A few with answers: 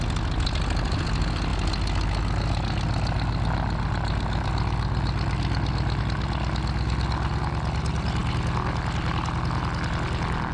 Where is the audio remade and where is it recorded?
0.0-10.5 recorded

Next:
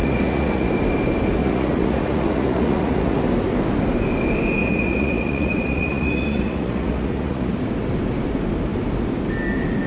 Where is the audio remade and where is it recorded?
0.0-0.7 remade; 0.7-1.4 recorded; 1.4-3.2 remade; 3.2-4.6 recorded; 4.6-7.5 remade; 7.5-9.9 recorded

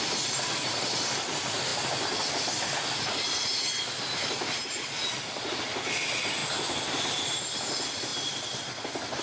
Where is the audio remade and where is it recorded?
0.0-9.2 recorded

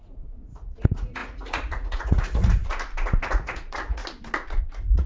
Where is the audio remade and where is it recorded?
0.0-2.6 remade; 2.6-3.3 recorded; 3.3-4.0 remade; 4.0-4.6 recorded; 4.6-5.1 remade

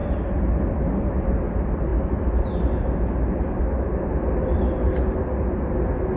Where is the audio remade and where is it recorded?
0.0-6.2 recorded